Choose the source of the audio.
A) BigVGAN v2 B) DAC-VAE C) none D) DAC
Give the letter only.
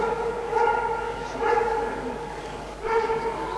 D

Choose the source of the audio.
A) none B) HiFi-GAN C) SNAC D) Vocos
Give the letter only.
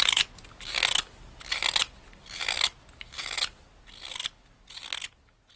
A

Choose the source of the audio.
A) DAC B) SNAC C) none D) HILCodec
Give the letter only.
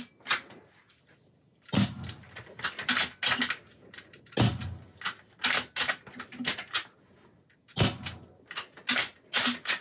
C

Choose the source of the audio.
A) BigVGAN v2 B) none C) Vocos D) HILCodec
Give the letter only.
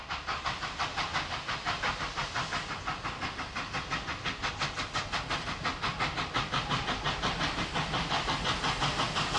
B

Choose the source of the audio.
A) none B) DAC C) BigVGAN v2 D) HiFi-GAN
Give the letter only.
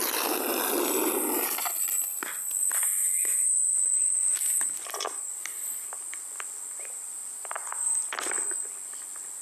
A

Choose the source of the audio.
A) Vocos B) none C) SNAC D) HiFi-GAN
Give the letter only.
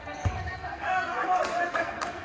C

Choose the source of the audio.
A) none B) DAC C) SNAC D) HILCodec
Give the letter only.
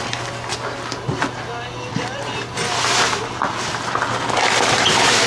A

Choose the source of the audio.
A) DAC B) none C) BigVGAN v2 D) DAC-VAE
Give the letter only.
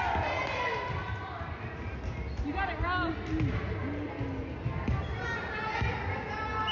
B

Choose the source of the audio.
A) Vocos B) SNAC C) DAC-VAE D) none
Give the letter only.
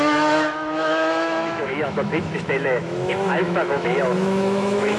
C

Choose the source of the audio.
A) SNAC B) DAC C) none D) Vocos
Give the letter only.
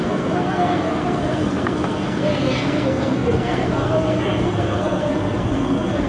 A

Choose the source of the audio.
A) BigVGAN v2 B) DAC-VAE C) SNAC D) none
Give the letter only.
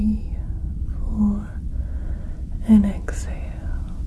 D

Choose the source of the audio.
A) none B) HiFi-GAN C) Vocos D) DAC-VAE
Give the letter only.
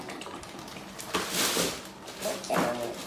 A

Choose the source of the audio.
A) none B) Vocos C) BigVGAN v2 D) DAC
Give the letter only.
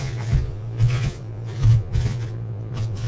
B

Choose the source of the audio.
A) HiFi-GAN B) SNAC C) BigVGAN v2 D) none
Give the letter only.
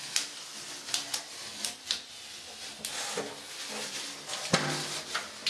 D